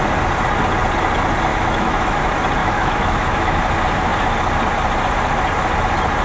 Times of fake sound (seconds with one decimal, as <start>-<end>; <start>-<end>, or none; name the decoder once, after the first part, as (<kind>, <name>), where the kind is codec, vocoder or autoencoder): 1.5-2.2 (autoencoder, DAC-VAE); 2.6-3.6